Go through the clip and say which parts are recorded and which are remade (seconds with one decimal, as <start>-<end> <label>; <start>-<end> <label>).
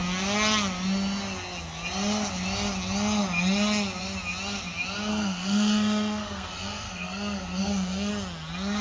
0.0-5.1 recorded; 5.1-8.1 remade; 8.1-8.8 recorded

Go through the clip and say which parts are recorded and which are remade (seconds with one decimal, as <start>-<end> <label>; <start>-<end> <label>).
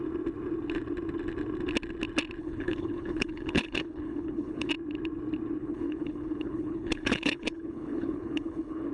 0.0-2.4 recorded; 2.4-4.7 remade; 4.7-5.6 recorded; 5.6-8.9 remade